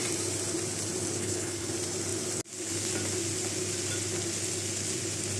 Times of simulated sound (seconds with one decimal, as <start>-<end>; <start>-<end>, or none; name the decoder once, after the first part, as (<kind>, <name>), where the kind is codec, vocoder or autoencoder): 1.2-1.7 (codec, HILCodec)